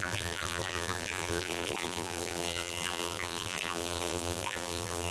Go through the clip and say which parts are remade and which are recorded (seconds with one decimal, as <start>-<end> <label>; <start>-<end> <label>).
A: 0.0-5.1 remade